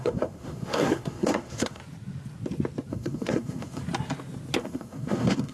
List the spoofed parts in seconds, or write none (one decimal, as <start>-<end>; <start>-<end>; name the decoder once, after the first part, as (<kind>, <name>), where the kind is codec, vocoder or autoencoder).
0.0-1.8 (codec, SNAC); 2.9-3.8; 4.6-5.5